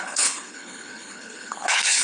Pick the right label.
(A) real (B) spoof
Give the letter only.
B